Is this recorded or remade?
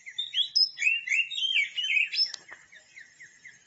recorded